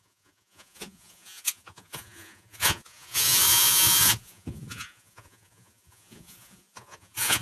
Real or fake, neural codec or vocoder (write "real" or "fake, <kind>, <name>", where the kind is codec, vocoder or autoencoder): fake, vocoder, Vocos